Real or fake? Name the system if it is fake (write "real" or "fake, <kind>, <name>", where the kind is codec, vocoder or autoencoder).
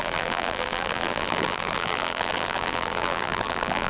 fake, vocoder, BigVGAN v2